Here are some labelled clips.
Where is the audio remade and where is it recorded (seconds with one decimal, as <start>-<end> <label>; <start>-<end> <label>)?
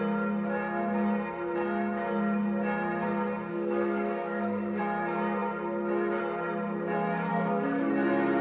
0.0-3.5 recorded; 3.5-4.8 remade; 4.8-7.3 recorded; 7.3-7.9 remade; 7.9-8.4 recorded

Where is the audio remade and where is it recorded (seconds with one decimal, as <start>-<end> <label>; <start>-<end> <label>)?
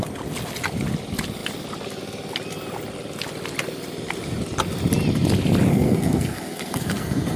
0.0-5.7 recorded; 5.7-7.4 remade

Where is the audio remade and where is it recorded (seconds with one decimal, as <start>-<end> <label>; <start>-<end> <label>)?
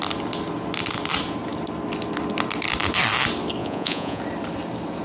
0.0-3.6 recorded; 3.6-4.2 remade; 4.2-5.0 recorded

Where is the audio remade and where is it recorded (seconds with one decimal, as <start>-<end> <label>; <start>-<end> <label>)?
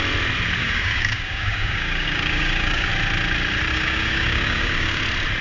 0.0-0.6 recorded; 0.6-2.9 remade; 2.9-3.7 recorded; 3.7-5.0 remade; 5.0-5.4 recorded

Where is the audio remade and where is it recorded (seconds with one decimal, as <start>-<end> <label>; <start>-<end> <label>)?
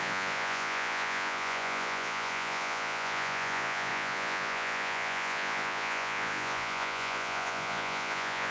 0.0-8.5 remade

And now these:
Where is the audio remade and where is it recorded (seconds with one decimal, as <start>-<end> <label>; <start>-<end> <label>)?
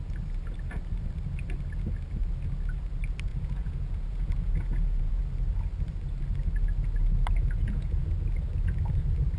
0.0-3.3 recorded; 3.3-5.2 remade; 5.2-7.6 recorded; 7.6-8.1 remade; 8.1-9.4 recorded